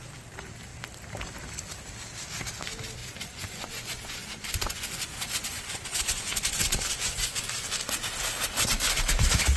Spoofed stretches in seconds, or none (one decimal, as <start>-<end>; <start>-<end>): 3.0-7.4